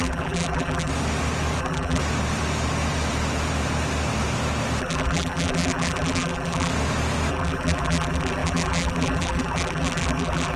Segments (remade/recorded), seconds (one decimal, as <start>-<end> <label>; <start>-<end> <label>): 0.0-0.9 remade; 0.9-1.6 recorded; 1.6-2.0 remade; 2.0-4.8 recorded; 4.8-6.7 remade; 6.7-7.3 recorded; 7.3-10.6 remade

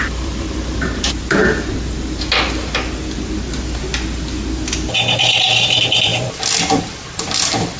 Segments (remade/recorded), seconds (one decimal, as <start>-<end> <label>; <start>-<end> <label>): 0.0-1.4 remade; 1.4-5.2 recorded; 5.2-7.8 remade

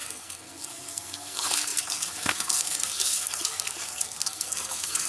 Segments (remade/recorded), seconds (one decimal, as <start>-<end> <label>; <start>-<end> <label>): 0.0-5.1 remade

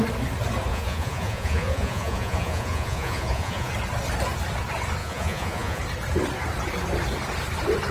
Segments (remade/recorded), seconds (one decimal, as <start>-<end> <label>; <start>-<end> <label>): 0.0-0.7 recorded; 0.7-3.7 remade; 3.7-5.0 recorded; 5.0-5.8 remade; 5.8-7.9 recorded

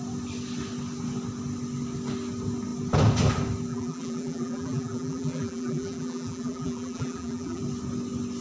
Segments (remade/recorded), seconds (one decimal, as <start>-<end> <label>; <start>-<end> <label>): 0.0-3.7 recorded; 3.7-7.6 remade; 7.6-8.4 recorded